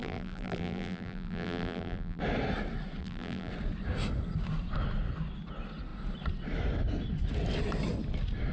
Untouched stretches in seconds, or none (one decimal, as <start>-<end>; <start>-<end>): 2.2-3.0; 3.5-8.5